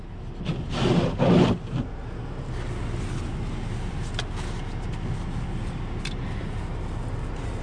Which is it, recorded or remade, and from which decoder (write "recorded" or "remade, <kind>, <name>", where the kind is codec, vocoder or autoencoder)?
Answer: recorded